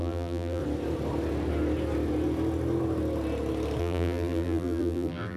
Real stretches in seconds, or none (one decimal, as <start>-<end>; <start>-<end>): 0.6-3.8